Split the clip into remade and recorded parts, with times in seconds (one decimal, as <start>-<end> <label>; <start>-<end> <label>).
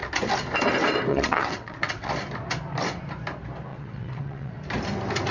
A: 0.0-1.1 recorded; 1.1-2.1 remade; 2.1-3.7 recorded; 3.7-4.5 remade; 4.5-5.3 recorded